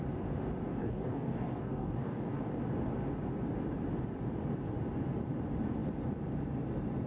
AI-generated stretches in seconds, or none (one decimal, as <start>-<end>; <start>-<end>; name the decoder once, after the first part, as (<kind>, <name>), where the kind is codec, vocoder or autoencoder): 0.8-2.6 (codec, DAC)